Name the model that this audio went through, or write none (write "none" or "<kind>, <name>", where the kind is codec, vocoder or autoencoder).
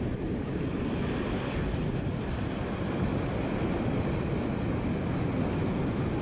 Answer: none